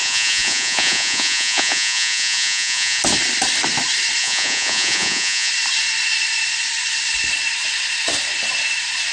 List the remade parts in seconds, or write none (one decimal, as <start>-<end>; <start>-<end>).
0.0-3.0; 4.2-5.5